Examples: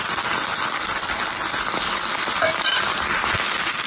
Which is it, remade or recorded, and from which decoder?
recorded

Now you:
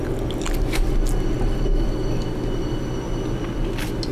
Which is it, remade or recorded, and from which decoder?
recorded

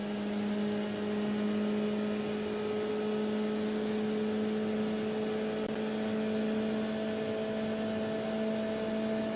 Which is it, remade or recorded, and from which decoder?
recorded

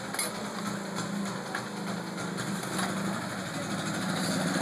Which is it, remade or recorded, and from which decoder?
recorded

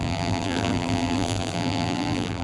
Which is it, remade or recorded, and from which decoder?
remade, vocoder, BigVGAN v2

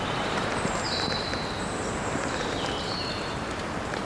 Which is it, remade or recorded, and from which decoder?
remade, vocoder, BigVGAN v2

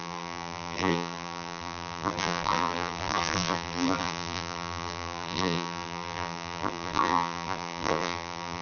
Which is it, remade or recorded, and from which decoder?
remade, vocoder, BigVGAN v2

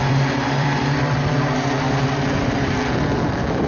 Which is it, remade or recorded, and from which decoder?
remade, vocoder, BigVGAN v2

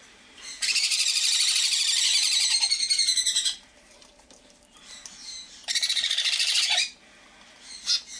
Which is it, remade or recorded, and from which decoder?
remade, vocoder, BigVGAN v2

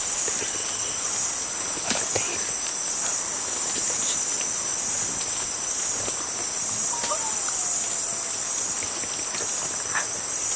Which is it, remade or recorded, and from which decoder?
recorded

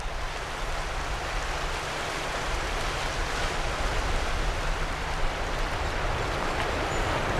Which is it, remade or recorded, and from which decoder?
remade, vocoder, BigVGAN v2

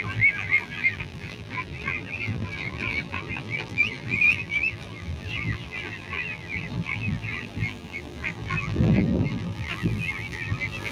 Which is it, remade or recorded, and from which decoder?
remade, vocoder, BigVGAN v2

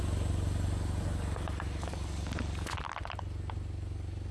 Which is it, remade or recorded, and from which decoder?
recorded